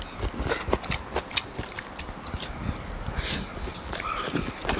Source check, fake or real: real